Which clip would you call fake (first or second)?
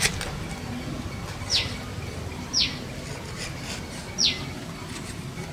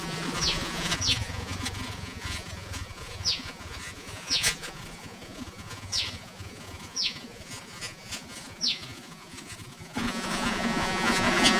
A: second